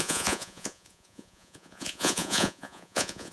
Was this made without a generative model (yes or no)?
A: no